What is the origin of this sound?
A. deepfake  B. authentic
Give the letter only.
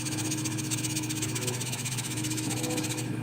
A